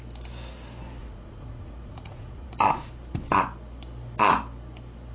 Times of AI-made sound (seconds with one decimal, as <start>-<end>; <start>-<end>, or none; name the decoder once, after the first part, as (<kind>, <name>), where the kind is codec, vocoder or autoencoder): 1.0-2.5 (vocoder, Vocos)